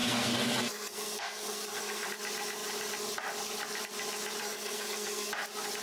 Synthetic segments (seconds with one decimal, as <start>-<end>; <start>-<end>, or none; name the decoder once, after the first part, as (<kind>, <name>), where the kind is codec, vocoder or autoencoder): 0.0-2.1 (codec, SNAC); 4.4-5.3